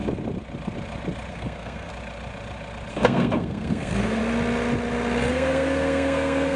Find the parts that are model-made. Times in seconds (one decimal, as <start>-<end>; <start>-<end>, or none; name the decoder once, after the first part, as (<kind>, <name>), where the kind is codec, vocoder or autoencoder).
1.3-1.9 (codec, SNAC); 2.9-4.2; 5.3-6.6